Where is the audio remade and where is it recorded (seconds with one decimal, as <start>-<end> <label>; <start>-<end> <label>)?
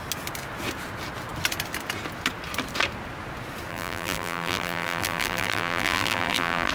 0.0-3.7 recorded; 3.7-6.7 remade